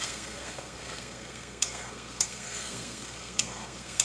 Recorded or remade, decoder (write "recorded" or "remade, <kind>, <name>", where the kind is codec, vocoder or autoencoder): remade, codec, SNAC